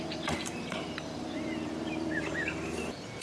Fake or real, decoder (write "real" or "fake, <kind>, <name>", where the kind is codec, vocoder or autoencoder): fake, vocoder, BigVGAN v2